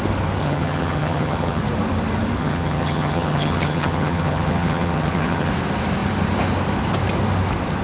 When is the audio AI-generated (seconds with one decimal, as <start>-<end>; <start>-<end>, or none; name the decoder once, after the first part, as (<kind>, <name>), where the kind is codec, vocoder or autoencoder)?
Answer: 0.4-1.6 (vocoder, HiFi-GAN); 2.4-5.5

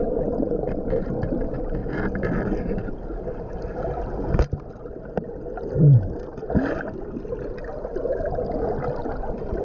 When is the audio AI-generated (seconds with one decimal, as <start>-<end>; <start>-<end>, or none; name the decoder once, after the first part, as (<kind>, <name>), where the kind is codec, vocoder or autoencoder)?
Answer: none

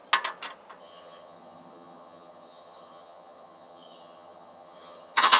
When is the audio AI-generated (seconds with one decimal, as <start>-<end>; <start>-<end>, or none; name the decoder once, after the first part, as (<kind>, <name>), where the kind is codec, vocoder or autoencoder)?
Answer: 0.8-5.4 (vocoder, HiFi-GAN)

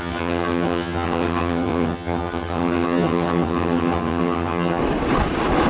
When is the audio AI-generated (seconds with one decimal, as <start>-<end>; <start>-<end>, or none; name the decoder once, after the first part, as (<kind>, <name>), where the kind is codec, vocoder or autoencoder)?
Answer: 0.0-4.8 (vocoder, HiFi-GAN)

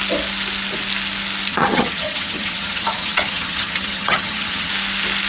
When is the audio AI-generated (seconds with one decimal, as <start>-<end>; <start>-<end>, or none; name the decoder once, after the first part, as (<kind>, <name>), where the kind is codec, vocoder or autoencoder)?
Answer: 1.5-4.7 (vocoder, HiFi-GAN)

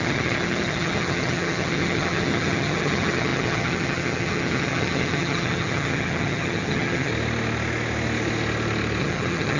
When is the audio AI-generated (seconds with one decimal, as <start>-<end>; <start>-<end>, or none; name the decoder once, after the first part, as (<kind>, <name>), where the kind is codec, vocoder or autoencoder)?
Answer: 0.0-7.1 (vocoder, HiFi-GAN); 9.0-9.6

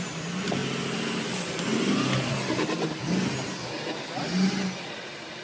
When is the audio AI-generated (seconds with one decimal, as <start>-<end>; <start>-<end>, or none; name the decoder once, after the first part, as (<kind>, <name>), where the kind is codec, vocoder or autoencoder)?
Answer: none

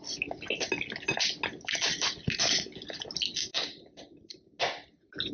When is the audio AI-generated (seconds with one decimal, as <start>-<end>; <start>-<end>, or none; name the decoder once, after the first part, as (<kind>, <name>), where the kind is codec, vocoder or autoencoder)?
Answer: none